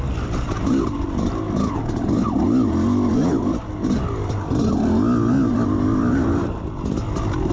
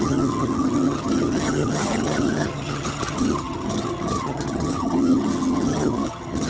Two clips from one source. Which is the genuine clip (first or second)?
first